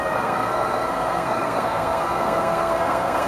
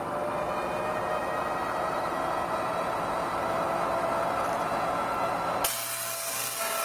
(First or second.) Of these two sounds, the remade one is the first